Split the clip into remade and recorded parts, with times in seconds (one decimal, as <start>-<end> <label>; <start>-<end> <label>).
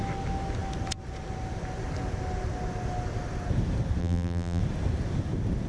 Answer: 0.0-4.0 recorded; 4.0-4.6 remade; 4.6-5.7 recorded